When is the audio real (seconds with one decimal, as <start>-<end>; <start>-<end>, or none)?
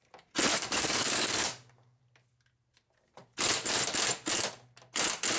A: 0.0-0.5; 2.0-5.4